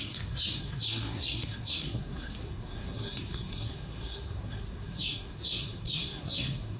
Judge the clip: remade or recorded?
remade